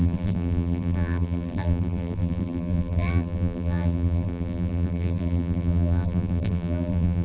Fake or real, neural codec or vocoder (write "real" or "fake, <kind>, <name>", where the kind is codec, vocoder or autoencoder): fake, vocoder, BigVGAN v2